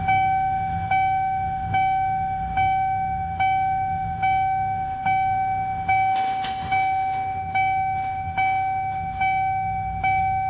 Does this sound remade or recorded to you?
remade